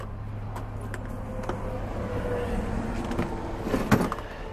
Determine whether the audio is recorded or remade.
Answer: recorded